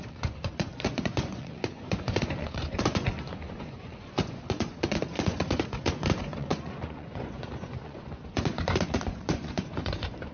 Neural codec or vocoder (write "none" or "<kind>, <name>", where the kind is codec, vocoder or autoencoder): vocoder, Vocos